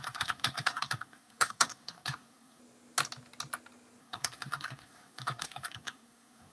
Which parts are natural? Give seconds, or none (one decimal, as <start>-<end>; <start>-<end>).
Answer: 2.6-4.0